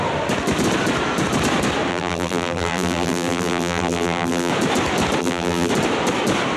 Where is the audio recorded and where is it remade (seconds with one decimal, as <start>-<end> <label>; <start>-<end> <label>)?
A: 0.0-1.9 recorded; 1.9-4.5 remade; 4.5-5.2 recorded; 5.2-5.7 remade; 5.7-6.6 recorded